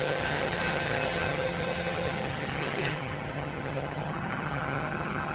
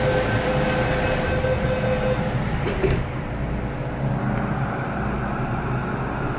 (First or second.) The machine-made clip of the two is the first